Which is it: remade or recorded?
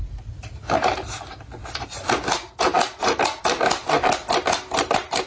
recorded